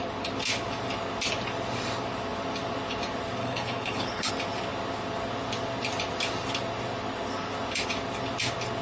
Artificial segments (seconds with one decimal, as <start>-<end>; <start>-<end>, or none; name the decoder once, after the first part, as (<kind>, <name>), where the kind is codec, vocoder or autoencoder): 3.4-4.3 (codec, HILCodec)